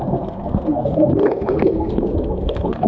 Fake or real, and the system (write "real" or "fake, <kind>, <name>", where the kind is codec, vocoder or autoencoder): fake, codec, SNAC